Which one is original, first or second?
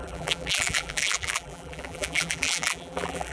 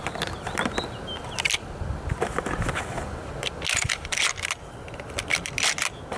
second